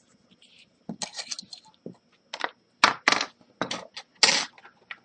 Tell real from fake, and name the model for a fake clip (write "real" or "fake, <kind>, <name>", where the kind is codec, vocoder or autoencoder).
real